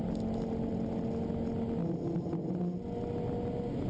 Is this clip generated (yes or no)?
no